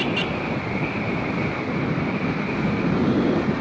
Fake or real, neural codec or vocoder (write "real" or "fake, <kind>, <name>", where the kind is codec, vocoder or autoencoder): real